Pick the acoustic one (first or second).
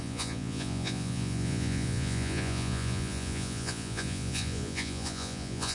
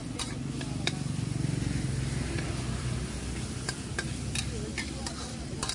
second